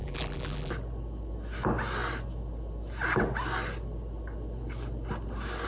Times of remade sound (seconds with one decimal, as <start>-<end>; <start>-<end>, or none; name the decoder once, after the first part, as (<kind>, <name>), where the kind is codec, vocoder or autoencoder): 0.0-0.7 (vocoder, BigVGAN v2)